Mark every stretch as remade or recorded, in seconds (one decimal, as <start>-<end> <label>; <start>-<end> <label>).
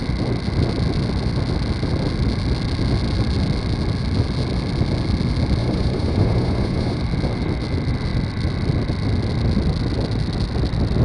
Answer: 0.0-5.6 recorded; 5.6-7.0 remade; 7.0-11.0 recorded